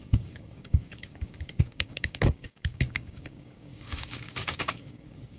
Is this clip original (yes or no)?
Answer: no